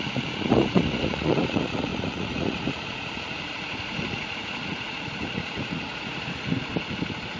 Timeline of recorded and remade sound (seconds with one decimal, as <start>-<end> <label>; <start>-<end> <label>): 0.0-6.7 remade; 6.7-7.4 recorded